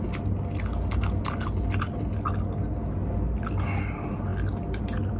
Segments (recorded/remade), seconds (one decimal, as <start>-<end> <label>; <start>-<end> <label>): 0.0-5.2 recorded